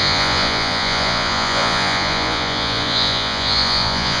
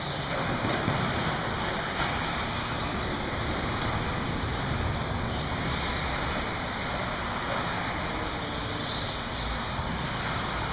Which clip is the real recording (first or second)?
second